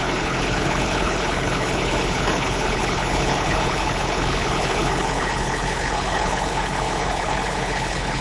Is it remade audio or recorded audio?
remade